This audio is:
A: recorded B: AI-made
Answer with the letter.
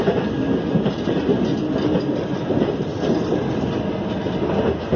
A